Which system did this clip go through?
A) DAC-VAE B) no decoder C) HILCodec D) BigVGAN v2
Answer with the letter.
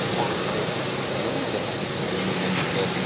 B